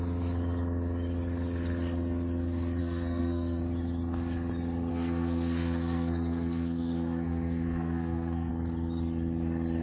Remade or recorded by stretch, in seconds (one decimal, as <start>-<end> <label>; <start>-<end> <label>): 0.0-2.8 recorded; 2.8-3.6 remade; 3.6-4.9 recorded; 4.9-8.5 remade; 8.5-9.8 recorded